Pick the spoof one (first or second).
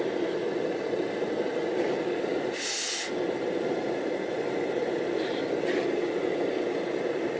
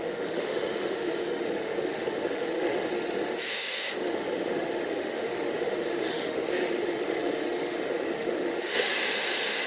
second